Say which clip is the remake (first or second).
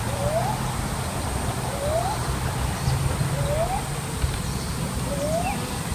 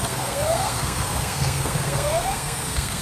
second